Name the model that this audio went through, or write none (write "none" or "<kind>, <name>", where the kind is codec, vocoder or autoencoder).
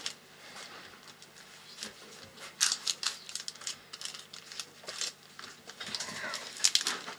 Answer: none